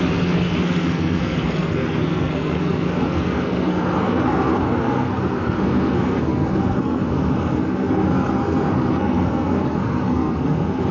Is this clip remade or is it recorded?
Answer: remade